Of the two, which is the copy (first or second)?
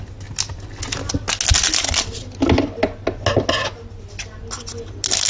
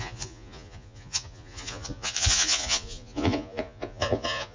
second